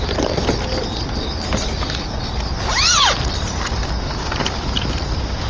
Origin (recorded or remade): recorded